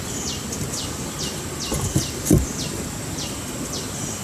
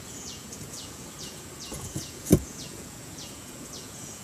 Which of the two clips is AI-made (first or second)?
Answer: second